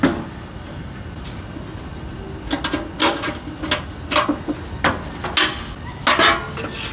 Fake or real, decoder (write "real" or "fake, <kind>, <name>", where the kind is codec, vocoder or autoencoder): real